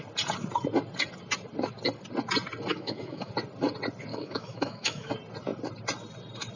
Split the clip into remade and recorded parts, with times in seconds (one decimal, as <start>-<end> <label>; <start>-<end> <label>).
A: 0.0-2.7 recorded; 2.7-3.3 remade; 3.3-4.1 recorded; 4.1-5.1 remade; 5.1-6.6 recorded